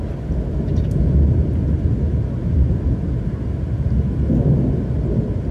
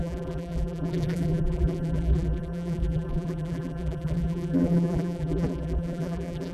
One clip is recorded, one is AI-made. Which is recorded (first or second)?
first